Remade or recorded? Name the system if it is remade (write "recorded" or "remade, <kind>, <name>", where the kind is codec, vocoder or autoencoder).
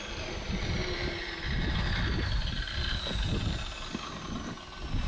recorded